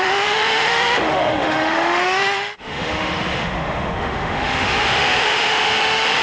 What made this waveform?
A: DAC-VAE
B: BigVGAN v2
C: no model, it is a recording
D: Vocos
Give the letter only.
A